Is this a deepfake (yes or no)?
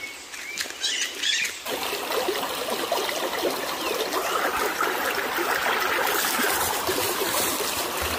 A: no